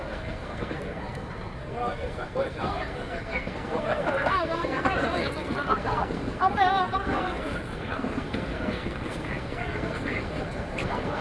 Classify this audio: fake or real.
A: fake